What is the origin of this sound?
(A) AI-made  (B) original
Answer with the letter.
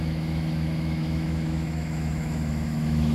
A